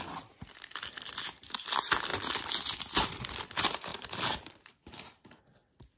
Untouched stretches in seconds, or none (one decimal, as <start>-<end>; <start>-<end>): 0.0-3.9; 5.4-6.0